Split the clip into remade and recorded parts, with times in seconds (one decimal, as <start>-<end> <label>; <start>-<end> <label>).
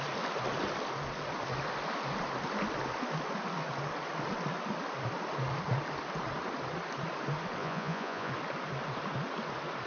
0.0-7.6 recorded; 7.6-8.3 remade; 8.3-9.9 recorded